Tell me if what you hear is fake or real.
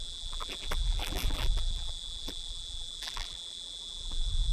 fake